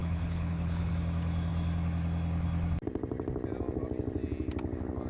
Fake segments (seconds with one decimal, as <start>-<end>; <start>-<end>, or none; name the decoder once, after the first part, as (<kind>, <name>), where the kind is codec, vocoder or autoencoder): 0.0-0.9 (codec, HILCodec)